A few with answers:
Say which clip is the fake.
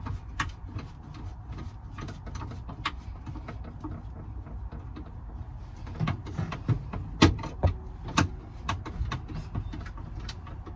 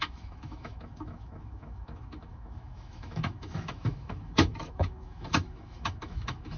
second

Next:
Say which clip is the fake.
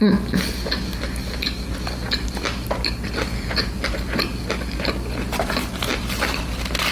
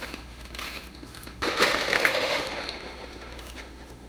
second